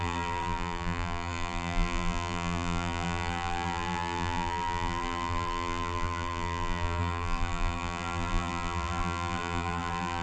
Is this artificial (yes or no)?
yes